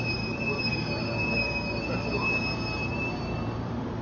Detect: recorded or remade remade